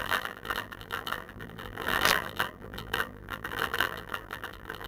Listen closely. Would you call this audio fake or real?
fake